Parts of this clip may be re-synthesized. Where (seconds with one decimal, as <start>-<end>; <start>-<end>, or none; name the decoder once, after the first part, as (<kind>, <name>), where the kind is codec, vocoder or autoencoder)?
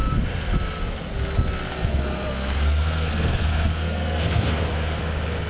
1.7-5.0 (codec, SNAC)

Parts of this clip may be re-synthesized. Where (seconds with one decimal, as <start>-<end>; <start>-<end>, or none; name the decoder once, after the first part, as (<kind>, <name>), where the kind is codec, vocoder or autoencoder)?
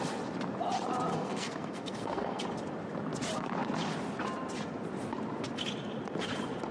1.1-2.4 (codec, SNAC)